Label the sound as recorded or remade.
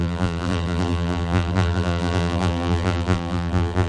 remade